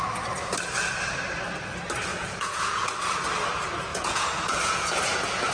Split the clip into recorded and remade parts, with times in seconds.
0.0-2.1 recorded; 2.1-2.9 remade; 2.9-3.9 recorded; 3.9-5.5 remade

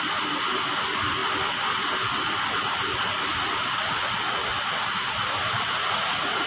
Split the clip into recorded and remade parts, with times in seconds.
0.0-5.8 recorded; 5.8-6.5 remade